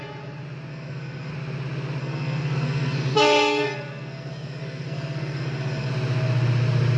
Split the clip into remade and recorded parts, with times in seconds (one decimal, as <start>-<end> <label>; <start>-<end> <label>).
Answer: 0.0-0.7 recorded; 0.7-1.3 remade; 1.3-2.0 recorded; 2.0-5.9 remade; 5.9-7.0 recorded

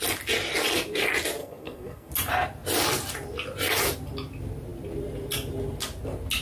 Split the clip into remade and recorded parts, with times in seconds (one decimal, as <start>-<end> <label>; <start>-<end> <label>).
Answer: 0.0-1.4 recorded; 1.4-2.1 remade; 2.1-6.4 recorded